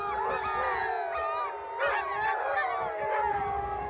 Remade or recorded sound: recorded